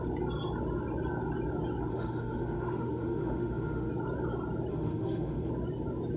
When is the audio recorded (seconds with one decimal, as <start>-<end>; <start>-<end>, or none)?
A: 0.0-1.9; 3.9-4.7; 5.5-6.2